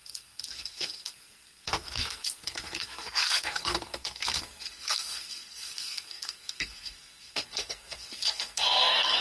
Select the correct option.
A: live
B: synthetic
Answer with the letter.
B